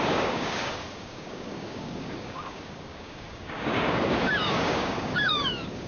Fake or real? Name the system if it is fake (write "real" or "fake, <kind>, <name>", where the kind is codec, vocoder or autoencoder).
fake, codec, DAC